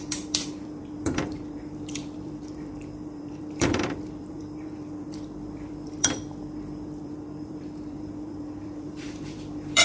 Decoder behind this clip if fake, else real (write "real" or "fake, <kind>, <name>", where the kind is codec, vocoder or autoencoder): fake, vocoder, BigVGAN v2